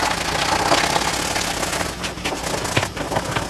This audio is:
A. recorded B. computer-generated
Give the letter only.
A